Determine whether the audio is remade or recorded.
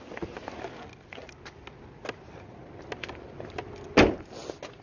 recorded